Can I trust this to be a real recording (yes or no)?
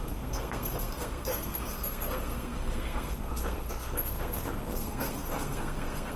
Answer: no